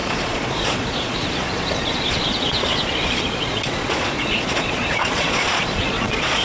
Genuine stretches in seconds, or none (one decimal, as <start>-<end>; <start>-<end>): none